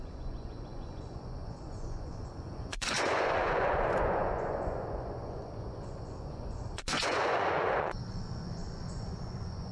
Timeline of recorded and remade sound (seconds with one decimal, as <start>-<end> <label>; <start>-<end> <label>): 0.0-9.7 remade